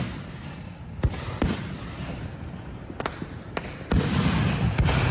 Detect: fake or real real